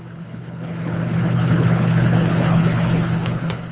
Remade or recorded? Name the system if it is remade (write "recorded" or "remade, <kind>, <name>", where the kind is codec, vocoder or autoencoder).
remade, codec, HILCodec